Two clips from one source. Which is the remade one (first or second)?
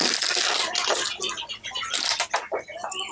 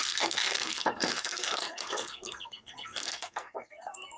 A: second